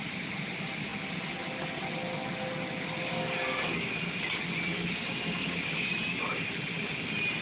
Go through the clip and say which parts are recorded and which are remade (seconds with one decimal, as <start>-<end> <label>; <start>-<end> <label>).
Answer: 0.0-3.1 recorded; 3.1-3.9 remade; 3.9-5.4 recorded; 5.4-6.0 remade; 6.0-7.4 recorded